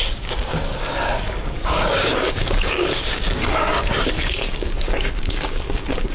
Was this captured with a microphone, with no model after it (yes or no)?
no